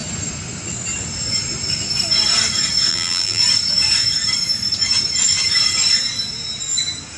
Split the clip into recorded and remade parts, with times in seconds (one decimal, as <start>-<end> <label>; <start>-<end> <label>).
0.0-2.9 recorded; 2.9-3.4 remade; 3.4-7.2 recorded